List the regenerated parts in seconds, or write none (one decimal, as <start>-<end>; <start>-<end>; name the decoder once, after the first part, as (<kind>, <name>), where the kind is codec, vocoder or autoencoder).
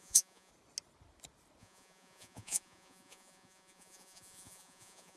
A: 0.0-0.5 (vocoder, Vocos); 1.6-5.2